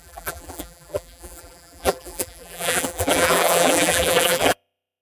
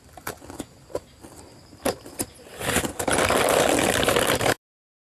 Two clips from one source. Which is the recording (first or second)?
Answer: second